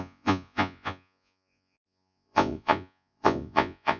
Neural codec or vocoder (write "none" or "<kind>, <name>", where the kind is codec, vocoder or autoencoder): vocoder, Vocos